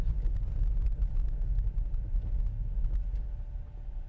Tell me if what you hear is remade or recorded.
recorded